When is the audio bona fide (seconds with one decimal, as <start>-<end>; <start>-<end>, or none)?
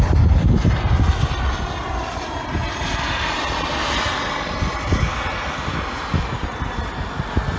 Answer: 0.0-7.6